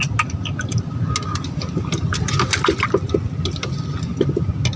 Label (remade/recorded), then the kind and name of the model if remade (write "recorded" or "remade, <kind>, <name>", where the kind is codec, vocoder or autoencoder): recorded